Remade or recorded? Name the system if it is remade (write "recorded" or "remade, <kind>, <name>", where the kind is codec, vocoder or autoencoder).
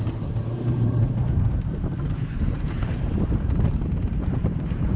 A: remade, vocoder, BigVGAN v2